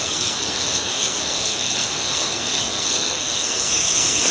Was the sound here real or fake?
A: fake